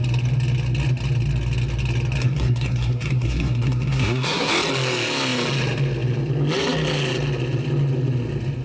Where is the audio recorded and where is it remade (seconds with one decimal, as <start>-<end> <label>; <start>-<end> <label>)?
0.0-2.2 recorded; 2.2-4.5 remade; 4.5-8.6 recorded